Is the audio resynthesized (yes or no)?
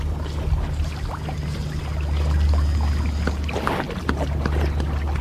no